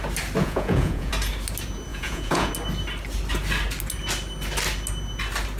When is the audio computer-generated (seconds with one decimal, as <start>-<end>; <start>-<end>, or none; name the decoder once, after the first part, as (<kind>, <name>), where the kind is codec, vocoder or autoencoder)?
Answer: 0.4-1.1 (vocoder, Vocos); 1.9-2.5

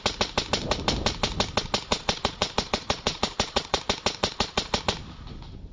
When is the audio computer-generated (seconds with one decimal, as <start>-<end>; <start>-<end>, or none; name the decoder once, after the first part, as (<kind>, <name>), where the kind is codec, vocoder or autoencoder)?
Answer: 1.9-3.8 (vocoder, Vocos); 4.2-4.8

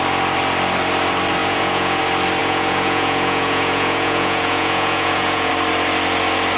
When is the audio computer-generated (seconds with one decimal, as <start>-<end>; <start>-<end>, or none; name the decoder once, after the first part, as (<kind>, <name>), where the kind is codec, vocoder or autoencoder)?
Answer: 1.4-2.0 (vocoder, Vocos); 2.4-5.5

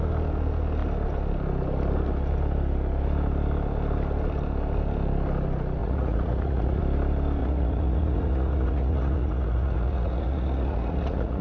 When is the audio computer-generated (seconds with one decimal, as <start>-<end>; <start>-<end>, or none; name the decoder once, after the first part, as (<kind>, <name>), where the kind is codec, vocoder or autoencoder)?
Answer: 5.8-6.8 (vocoder, Vocos); 7.4-11.4